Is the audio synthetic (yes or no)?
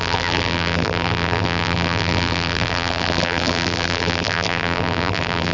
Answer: yes